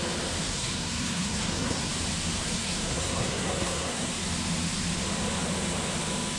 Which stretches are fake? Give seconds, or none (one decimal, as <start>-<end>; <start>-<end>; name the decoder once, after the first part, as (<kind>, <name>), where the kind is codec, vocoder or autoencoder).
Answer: 0.4-1.9 (codec, SNAC); 2.4-4.1